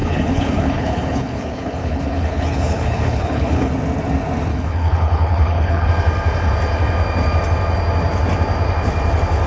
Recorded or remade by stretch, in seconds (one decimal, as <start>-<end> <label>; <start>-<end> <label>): 0.0-3.7 remade; 3.7-4.5 recorded; 4.5-5.9 remade; 5.9-9.5 recorded